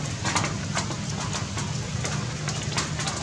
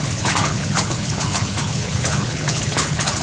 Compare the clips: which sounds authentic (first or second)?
first